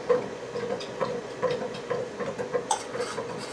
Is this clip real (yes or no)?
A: no